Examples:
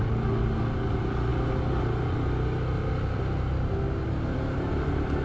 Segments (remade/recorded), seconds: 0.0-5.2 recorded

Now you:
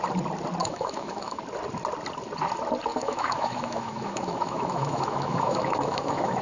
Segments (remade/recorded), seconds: 0.0-0.6 recorded; 0.6-1.4 remade; 1.4-2.9 recorded; 2.9-6.4 remade

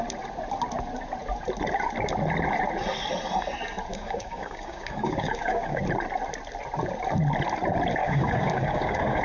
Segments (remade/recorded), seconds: 0.0-3.9 recorded; 3.9-5.8 remade; 5.8-8.0 recorded; 8.0-9.2 remade

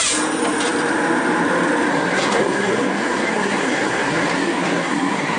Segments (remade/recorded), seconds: 0.0-1.9 recorded; 1.9-5.4 remade

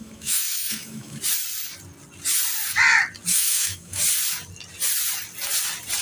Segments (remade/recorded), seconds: 0.0-1.2 remade; 1.2-3.3 recorded; 3.3-4.0 remade; 4.0-6.0 recorded